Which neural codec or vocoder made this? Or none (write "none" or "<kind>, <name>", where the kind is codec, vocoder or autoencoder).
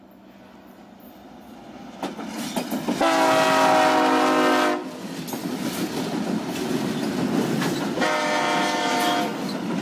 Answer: none